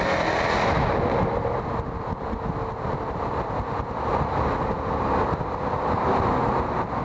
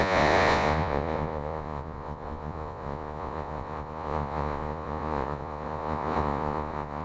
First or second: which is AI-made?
second